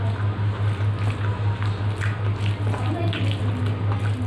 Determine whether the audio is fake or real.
real